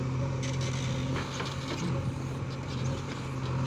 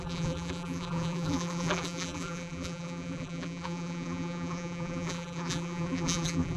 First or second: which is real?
first